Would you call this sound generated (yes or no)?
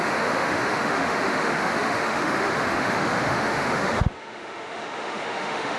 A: yes